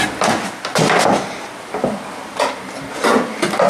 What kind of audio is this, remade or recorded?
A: recorded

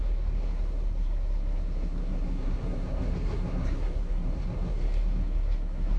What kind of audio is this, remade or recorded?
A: remade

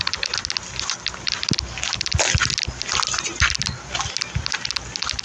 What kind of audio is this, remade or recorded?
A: recorded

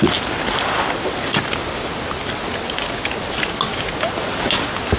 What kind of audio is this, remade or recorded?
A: recorded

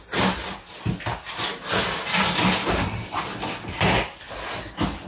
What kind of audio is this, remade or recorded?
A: recorded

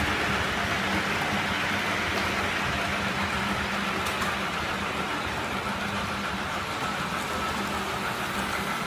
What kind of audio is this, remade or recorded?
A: recorded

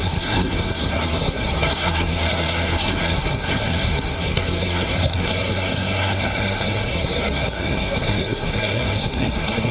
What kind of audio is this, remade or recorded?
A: remade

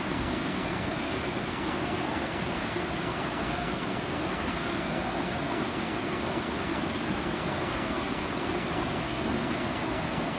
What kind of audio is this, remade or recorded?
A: remade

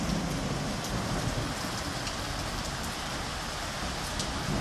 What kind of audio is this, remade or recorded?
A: recorded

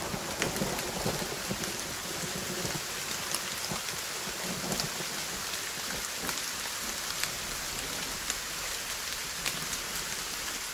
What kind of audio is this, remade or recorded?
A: recorded